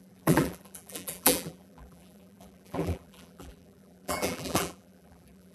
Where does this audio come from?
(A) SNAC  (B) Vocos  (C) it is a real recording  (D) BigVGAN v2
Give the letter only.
D